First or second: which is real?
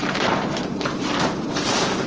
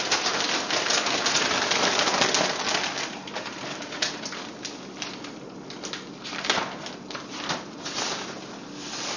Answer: second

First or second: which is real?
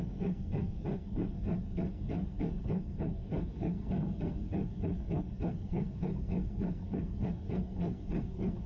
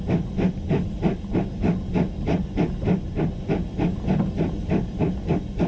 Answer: second